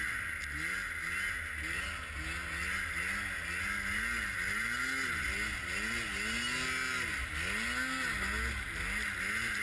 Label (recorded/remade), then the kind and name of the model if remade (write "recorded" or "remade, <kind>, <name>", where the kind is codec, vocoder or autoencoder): recorded